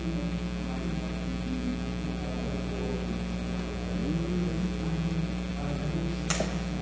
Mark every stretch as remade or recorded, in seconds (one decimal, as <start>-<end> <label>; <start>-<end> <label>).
0.0-6.8 recorded